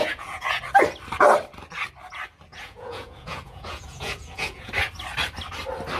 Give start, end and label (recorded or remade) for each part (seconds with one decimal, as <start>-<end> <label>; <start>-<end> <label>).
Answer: 0.0-0.6 remade; 0.6-2.5 recorded; 2.5-4.7 remade; 4.7-6.0 recorded